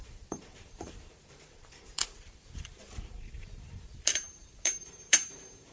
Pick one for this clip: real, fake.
fake